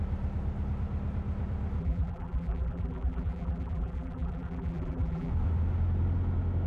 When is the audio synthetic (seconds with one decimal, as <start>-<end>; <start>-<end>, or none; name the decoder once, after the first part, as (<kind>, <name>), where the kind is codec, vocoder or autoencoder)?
1.8-5.3 (vocoder, BigVGAN v2)